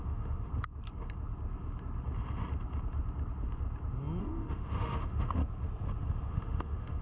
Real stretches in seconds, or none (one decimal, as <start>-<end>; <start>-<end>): 0.5-4.2; 5.4-6.2